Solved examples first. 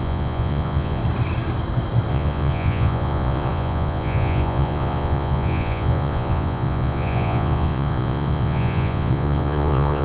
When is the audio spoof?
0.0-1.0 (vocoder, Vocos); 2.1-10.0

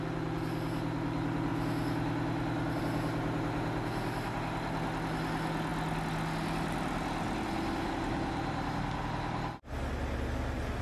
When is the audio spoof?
none

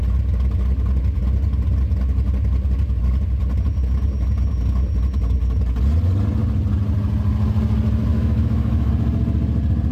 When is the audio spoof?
8.1-8.9 (autoencoder, DAC-VAE)

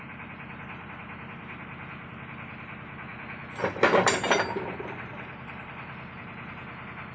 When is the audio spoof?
none

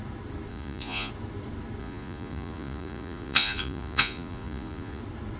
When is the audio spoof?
0.5-1.1 (vocoder, Vocos); 1.8-5.0

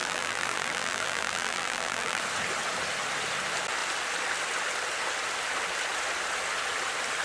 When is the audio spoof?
0.0-2.2 (vocoder, BigVGAN v2)

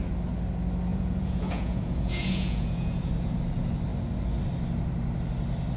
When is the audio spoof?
0.9-3.3 (vocoder, Vocos)

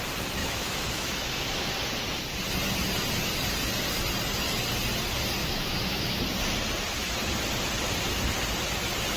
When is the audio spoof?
0.4-1.7 (autoencoder, DAC-VAE); 5.4-6.2